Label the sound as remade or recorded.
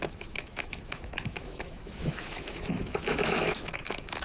remade